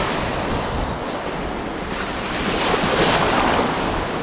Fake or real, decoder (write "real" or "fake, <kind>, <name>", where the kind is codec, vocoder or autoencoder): real